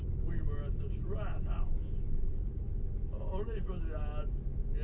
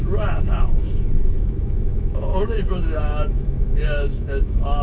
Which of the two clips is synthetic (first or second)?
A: second